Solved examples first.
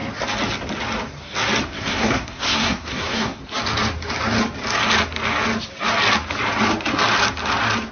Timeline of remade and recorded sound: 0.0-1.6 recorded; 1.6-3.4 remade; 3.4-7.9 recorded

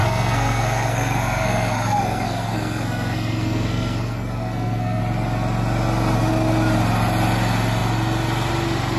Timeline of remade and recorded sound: 0.0-5.0 remade; 5.0-9.0 recorded

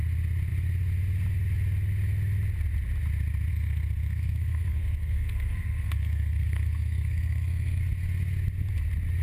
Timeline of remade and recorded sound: 0.0-3.5 recorded; 3.5-7.8 remade; 7.8-9.2 recorded

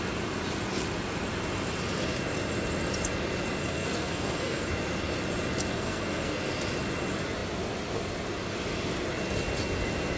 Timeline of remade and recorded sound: 0.0-3.6 recorded; 3.6-4.7 remade; 4.7-5.7 recorded; 5.7-6.4 remade; 6.4-10.2 recorded